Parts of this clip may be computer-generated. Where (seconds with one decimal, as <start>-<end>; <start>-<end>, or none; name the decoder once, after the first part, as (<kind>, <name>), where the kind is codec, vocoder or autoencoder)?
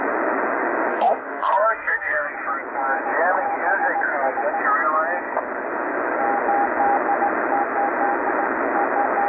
0.9-2.3 (codec, SNAC)